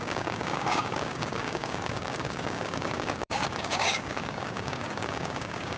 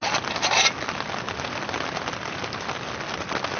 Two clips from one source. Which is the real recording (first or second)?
second